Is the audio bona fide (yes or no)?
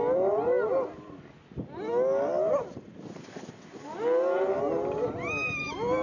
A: yes